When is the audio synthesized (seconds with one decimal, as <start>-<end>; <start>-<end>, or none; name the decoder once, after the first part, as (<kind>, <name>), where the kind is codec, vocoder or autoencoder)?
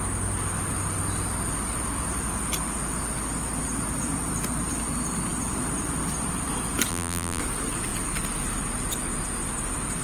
6.9-7.4 (vocoder, BigVGAN v2)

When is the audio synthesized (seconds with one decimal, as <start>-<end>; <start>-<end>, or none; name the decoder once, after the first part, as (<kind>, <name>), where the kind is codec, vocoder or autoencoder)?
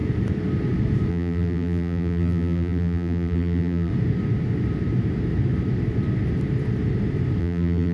1.1-3.9 (vocoder, BigVGAN v2); 7.4-7.9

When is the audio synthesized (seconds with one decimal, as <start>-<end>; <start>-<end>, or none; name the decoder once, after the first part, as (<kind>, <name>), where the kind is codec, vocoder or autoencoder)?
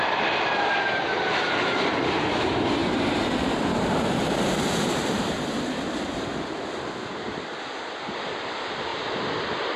0.0-6.3 (vocoder, BigVGAN v2); 7.1-8.9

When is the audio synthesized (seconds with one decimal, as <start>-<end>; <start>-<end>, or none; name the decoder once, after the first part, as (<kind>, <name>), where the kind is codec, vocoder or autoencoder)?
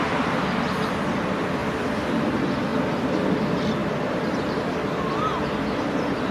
2.7-3.2 (vocoder, BigVGAN v2); 3.8-4.7